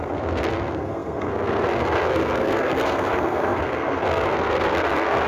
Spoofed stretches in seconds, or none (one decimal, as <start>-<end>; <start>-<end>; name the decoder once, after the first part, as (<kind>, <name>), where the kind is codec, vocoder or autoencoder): 0.0-5.3 (codec, SNAC)